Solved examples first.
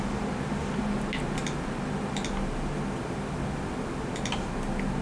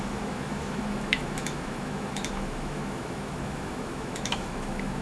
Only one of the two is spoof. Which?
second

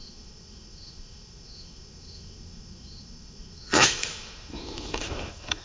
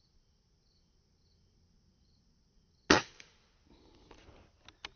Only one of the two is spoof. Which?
first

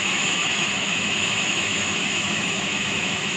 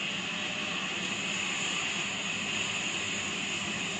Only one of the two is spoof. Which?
first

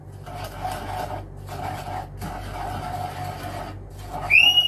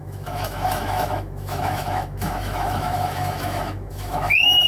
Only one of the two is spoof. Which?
second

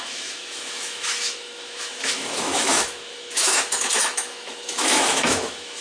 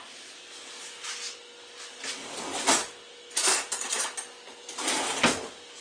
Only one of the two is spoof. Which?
first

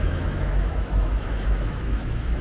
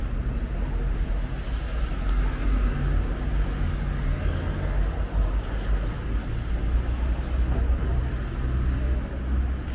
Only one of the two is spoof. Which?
first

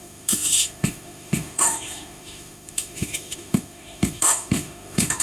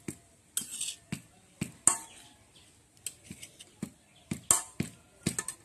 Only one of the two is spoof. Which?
first